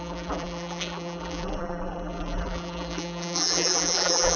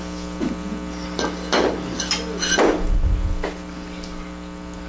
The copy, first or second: first